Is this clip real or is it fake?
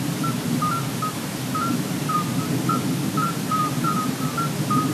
real